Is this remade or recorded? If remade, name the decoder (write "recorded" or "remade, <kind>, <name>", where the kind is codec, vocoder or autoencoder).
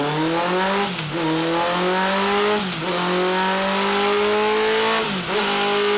recorded